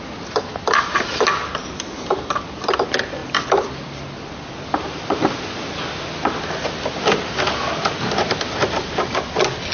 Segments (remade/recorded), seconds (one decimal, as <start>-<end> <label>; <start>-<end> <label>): 0.0-9.7 recorded